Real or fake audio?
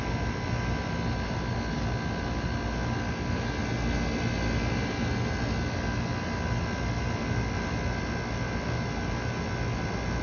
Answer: real